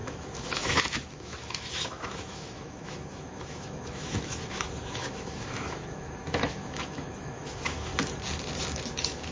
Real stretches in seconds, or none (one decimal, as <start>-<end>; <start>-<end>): 7.9-8.9